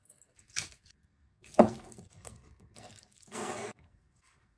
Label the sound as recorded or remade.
remade